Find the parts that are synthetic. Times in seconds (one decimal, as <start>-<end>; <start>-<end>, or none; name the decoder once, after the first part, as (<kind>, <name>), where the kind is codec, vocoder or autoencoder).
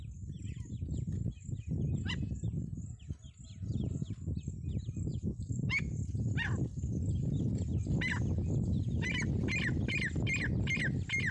5.1-5.8 (autoencoder, DAC-VAE)